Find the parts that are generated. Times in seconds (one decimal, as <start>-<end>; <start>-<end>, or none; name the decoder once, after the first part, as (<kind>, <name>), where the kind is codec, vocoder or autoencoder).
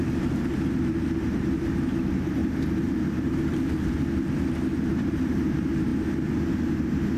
0.9-2.4 (vocoder, BigVGAN v2); 4.9-5.9